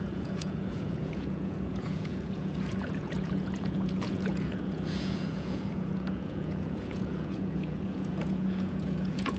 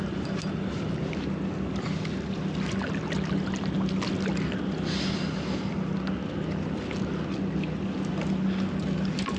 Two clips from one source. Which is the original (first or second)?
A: second